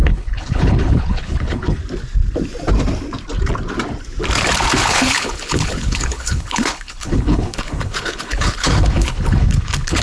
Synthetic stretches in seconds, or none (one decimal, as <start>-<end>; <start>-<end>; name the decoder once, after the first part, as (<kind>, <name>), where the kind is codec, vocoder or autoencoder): 0.0-1.8 (codec, HILCodec); 4.8-10.0